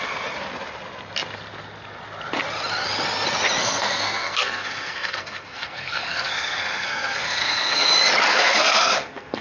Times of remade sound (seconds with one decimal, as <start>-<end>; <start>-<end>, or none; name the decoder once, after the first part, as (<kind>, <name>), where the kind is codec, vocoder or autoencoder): 3.6-7.9 (codec, SNAC); 8.3-9.4